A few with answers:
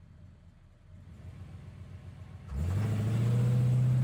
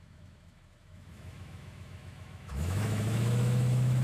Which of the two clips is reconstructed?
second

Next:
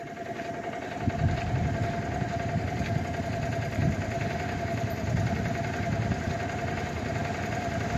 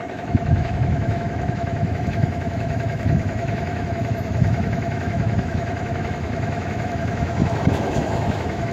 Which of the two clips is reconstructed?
second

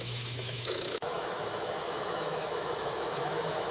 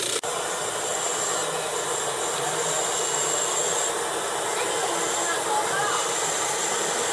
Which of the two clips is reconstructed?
first